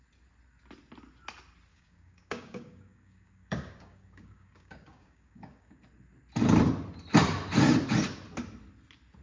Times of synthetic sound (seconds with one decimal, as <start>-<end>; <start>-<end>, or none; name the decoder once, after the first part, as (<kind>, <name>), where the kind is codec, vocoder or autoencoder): 1.7-5.8 (codec, DAC)